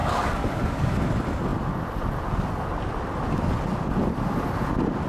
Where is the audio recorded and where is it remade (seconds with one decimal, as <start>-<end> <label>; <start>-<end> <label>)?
0.0-0.9 remade; 0.9-5.1 recorded

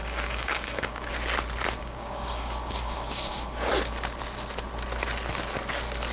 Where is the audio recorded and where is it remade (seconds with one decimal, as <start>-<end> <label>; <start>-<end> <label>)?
0.0-1.1 remade; 1.1-1.8 recorded; 1.8-3.7 remade; 3.7-6.1 recorded

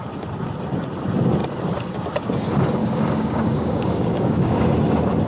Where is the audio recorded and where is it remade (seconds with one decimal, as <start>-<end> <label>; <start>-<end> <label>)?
0.0-2.8 recorded; 2.8-4.6 remade; 4.6-5.3 recorded